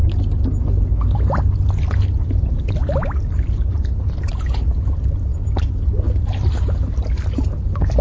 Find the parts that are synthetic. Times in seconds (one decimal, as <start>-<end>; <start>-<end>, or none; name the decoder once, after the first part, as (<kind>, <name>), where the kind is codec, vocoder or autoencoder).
none